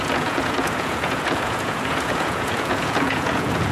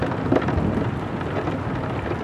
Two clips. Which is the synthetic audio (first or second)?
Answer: first